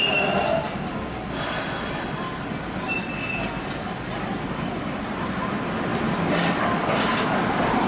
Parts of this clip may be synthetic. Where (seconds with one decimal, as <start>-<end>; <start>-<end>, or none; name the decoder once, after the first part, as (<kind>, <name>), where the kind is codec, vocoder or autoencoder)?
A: none

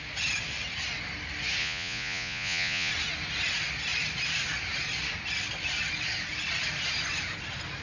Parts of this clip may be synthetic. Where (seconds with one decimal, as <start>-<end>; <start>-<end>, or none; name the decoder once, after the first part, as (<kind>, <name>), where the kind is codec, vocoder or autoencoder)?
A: 1.6-2.9 (vocoder, Vocos)